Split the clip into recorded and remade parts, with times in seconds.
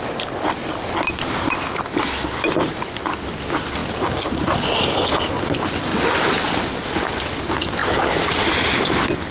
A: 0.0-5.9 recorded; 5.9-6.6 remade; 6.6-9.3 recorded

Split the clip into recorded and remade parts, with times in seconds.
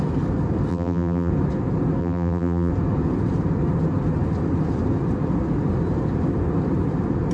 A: 0.0-0.7 recorded; 0.7-1.3 remade; 1.3-2.0 recorded; 2.0-2.7 remade; 2.7-7.3 recorded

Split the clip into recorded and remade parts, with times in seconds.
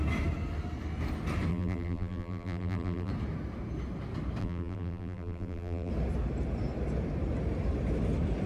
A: 0.0-1.5 recorded; 1.5-3.1 remade; 3.1-4.4 recorded; 4.4-5.9 remade; 5.9-8.5 recorded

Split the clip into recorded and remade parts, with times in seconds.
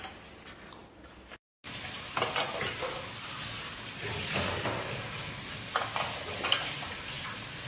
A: 0.0-7.7 recorded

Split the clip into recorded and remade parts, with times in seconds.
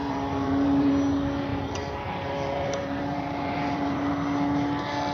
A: 0.0-0.9 remade; 0.9-1.5 recorded; 1.5-4.1 remade; 4.1-5.1 recorded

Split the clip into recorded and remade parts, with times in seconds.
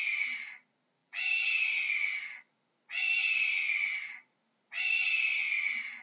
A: 0.0-1.0 recorded; 1.0-1.6 remade; 1.6-6.0 recorded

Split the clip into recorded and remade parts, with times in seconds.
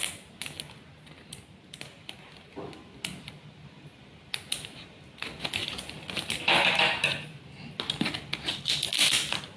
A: 0.0-9.6 recorded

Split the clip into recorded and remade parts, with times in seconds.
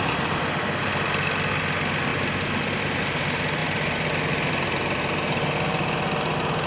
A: 0.0-6.7 recorded